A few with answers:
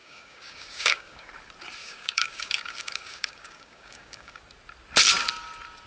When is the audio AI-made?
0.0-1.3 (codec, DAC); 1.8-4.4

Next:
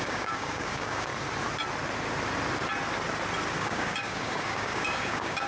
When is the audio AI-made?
0.0-1.1 (codec, DAC); 3.6-5.5

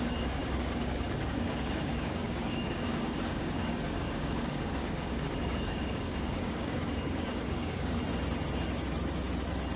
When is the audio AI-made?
0.0-8.0 (codec, DAC)

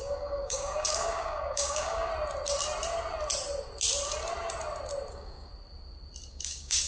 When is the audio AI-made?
0.0-2.1 (codec, DAC); 5.1-5.5; 6.3-6.9

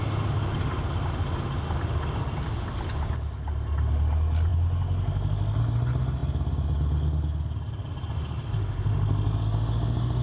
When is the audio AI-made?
none

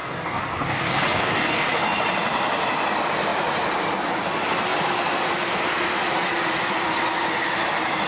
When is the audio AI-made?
0.0-1.7 (codec, DAC)

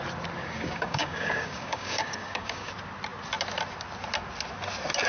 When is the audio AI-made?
0.4-2.7 (codec, DAC)

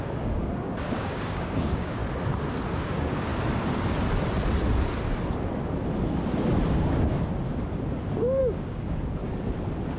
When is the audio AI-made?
0.0-2.0 (codec, DAC); 2.8-3.3; 8.4-9.2